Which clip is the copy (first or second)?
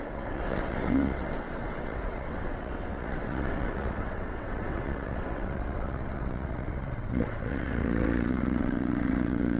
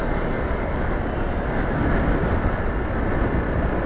first